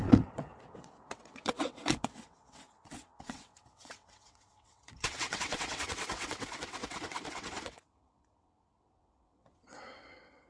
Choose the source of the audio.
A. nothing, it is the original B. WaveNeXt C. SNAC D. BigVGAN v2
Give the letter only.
B